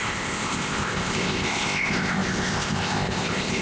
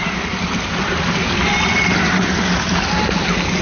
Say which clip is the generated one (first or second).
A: first